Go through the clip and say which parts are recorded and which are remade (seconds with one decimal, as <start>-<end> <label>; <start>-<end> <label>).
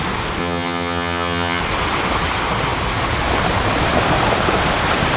0.0-0.4 recorded; 0.4-1.6 remade; 1.6-5.2 recorded